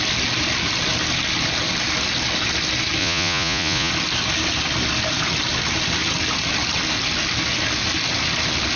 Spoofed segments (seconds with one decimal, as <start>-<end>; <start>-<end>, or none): 3.0-3.9